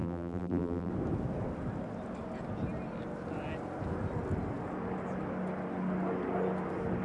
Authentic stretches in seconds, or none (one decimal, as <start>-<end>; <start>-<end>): 0.9-7.0